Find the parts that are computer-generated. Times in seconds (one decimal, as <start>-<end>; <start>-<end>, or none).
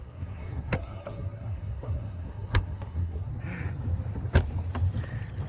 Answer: 0.0-3.3